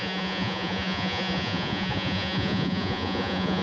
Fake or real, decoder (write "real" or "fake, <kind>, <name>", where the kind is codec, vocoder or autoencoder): fake, vocoder, Vocos